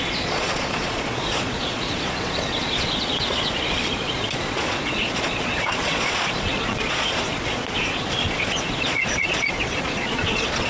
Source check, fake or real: fake